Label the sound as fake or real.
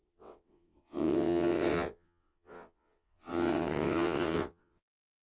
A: fake